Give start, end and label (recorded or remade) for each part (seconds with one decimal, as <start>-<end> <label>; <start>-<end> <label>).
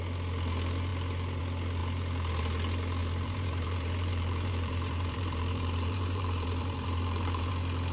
0.0-3.0 recorded; 3.0-7.5 remade; 7.5-7.9 recorded